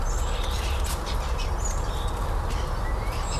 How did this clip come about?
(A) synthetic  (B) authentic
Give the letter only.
B